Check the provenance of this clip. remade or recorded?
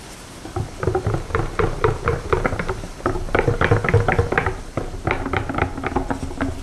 recorded